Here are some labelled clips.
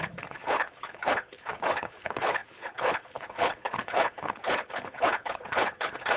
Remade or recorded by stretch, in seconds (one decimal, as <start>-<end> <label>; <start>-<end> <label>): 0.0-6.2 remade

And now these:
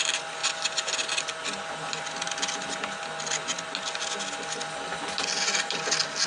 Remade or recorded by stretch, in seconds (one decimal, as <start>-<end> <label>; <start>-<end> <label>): 0.0-6.3 recorded

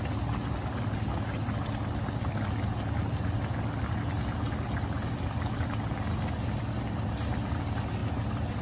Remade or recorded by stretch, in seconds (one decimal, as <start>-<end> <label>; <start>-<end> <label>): 0.0-8.6 recorded